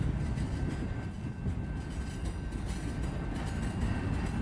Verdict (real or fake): real